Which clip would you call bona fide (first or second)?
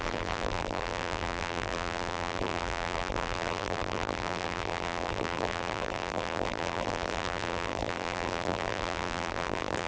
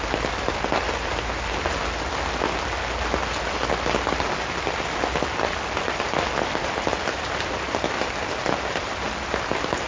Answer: second